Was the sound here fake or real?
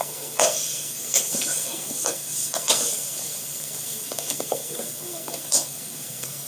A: fake